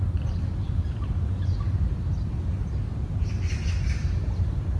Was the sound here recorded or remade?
recorded